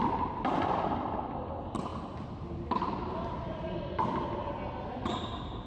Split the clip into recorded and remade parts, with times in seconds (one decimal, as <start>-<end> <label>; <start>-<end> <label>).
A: 0.0-5.7 recorded